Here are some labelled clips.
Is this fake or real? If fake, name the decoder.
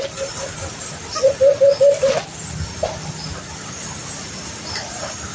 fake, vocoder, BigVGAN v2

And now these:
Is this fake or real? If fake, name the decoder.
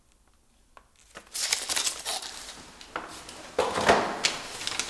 real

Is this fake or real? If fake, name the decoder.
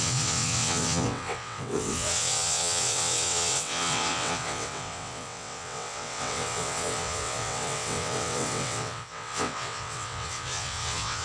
fake, vocoder, WaveNeXt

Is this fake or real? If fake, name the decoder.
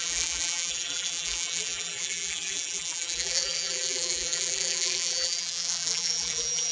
fake, vocoder, BigVGAN v2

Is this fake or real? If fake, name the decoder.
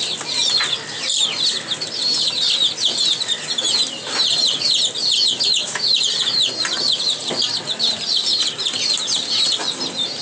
real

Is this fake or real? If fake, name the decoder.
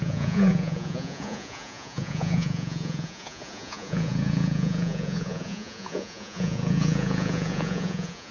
fake, vocoder, Vocos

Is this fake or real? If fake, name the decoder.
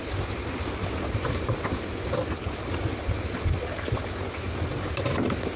real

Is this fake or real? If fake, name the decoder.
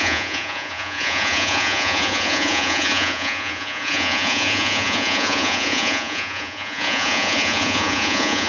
fake, vocoder, Vocos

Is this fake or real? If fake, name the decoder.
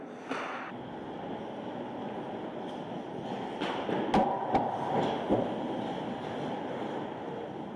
real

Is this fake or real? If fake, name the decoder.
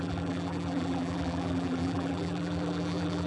fake, vocoder, BigVGAN v2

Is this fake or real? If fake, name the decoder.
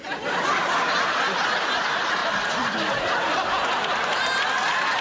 real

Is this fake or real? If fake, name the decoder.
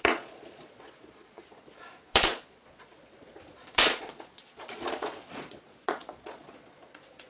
fake, vocoder, Vocos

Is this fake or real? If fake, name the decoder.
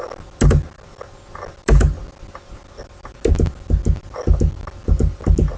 real